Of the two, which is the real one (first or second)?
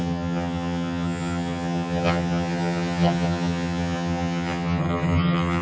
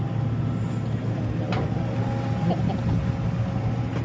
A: second